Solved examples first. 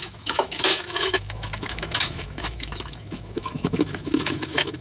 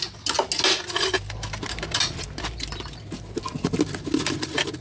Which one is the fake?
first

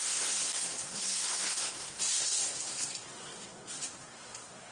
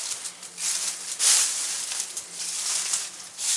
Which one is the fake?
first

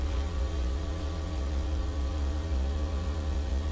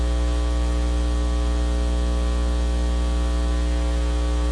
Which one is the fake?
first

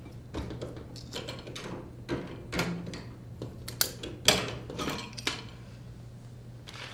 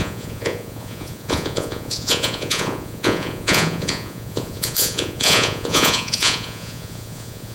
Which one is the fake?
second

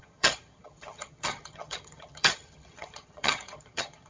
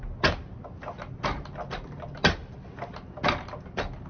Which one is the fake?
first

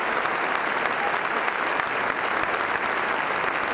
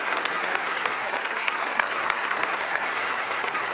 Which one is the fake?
second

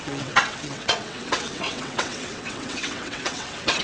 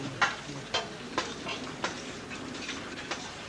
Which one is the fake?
first